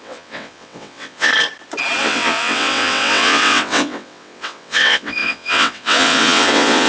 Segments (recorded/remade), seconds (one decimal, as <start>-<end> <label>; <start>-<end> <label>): 0.0-1.3 remade; 1.3-2.0 recorded; 2.0-6.9 remade

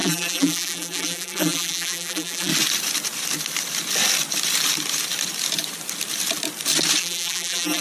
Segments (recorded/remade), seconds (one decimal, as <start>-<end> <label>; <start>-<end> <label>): 0.0-2.5 remade; 2.5-7.0 recorded; 7.0-7.8 remade

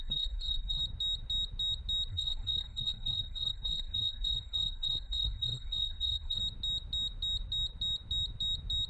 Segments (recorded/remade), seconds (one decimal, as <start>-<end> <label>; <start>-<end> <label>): 0.0-0.8 remade; 0.8-2.1 recorded; 2.1-6.4 remade; 6.4-8.9 recorded

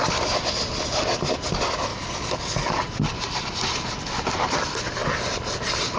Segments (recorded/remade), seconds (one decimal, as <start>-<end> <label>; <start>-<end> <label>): 0.0-1.9 recorded; 1.9-3.1 remade; 3.1-5.0 recorded; 5.0-6.0 remade